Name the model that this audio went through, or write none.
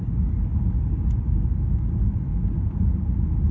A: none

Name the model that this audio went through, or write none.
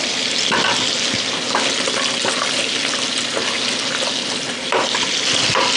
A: none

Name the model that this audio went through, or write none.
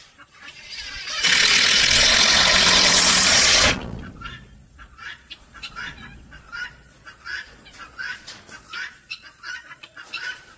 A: vocoder, Vocos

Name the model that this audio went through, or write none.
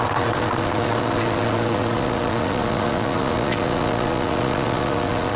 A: vocoder, Vocos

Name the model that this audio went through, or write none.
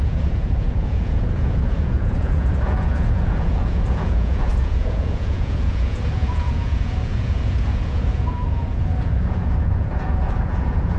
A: vocoder, Vocos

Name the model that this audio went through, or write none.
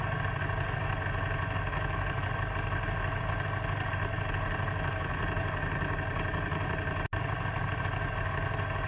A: none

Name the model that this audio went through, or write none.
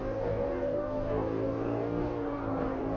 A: codec, DAC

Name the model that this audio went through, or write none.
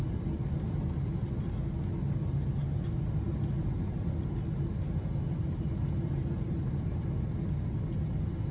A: none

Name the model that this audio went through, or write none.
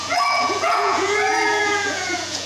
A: vocoder, Vocos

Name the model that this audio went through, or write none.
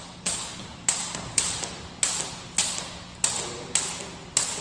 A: none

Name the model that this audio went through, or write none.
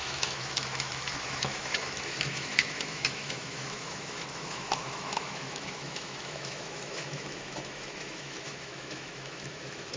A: autoencoder, DAC-VAE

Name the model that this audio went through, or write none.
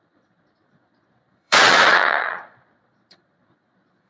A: vocoder, Vocos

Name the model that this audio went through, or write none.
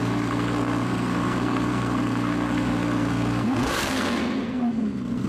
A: codec, SNAC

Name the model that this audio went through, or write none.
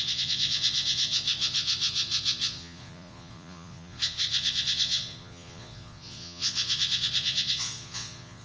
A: vocoder, Vocos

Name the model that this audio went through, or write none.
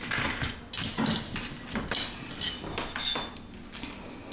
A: none